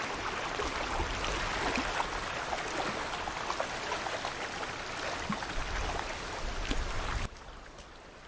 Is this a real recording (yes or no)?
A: yes